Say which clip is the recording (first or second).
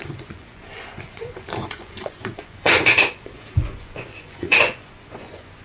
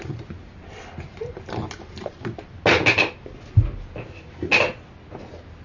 second